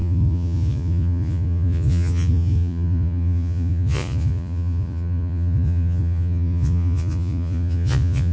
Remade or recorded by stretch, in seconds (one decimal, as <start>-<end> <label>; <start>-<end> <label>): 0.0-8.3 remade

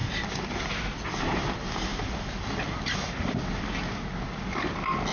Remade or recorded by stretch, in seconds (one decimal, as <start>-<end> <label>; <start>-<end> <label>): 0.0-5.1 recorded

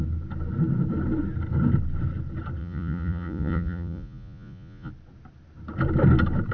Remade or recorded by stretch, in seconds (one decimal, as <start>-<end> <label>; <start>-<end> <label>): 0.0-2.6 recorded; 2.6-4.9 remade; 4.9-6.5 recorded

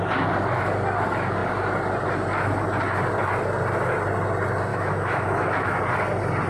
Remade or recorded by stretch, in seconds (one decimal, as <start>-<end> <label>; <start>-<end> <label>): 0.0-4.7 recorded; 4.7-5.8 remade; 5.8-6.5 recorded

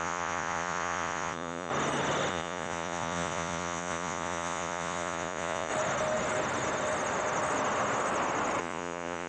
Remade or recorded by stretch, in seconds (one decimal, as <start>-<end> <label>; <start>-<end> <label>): 0.0-1.7 remade; 1.7-2.3 recorded; 2.3-5.7 remade; 5.7-8.6 recorded; 8.6-9.3 remade

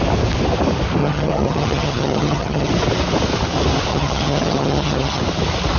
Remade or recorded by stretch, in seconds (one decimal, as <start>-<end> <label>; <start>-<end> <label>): 0.0-1.0 recorded; 1.0-2.7 remade; 2.7-3.9 recorded; 3.9-5.2 remade; 5.2-5.8 recorded

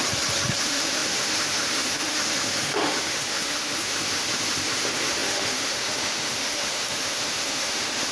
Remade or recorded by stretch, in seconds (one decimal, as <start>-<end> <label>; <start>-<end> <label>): 0.0-0.6 recorded; 0.6-8.1 remade